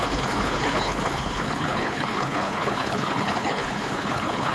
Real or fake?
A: fake